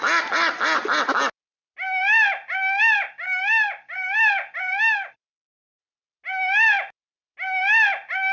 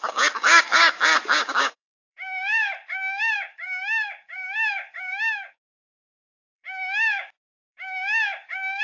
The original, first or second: first